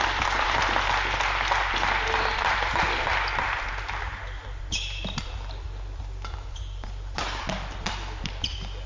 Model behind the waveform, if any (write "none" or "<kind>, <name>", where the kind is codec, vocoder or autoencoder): none